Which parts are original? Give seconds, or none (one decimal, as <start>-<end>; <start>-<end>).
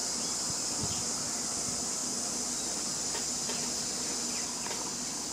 0.0-5.3